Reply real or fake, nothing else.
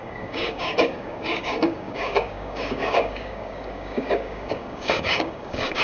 fake